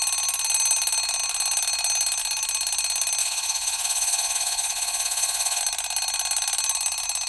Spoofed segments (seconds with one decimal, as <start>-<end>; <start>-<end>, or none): 3.2-5.6